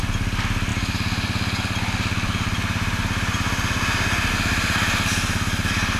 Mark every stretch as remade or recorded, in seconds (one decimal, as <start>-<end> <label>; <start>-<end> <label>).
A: 0.0-6.0 recorded